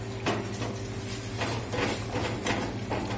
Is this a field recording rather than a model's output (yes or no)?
yes